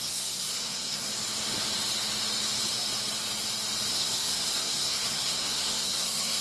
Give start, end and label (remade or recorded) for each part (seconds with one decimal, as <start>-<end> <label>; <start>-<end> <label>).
0.0-1.1 remade; 1.1-3.9 recorded; 3.9-6.4 remade